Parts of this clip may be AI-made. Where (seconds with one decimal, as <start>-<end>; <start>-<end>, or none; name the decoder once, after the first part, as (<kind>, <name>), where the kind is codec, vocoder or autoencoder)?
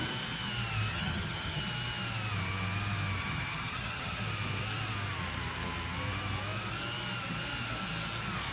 0.9-1.6 (vocoder, HiFi-GAN); 3.2-4.2